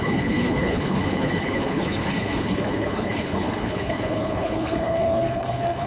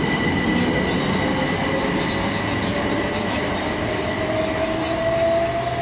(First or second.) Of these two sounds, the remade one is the first